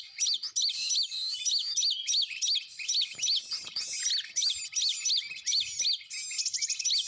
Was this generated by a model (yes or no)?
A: no